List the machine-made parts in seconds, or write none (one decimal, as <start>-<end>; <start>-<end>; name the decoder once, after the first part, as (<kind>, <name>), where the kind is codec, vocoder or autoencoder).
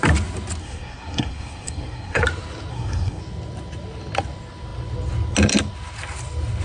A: 0.6-2.2 (codec, SNAC); 2.7-3.2